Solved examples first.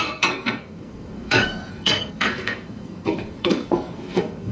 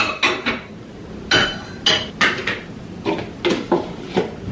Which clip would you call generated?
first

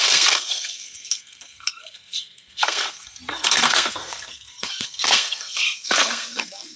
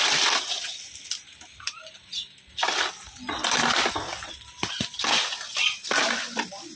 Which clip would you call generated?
first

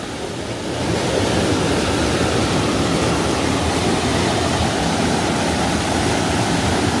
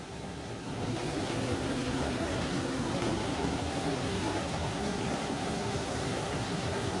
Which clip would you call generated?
second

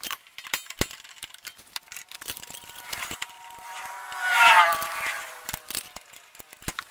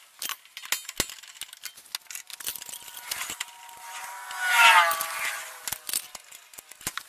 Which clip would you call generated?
first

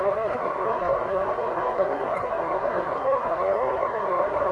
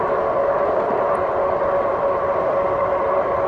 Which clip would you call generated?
first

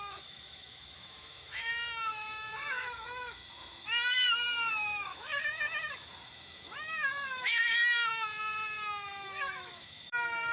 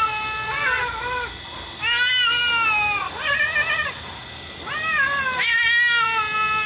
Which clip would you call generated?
first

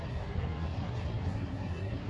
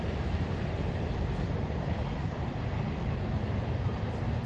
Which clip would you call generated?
first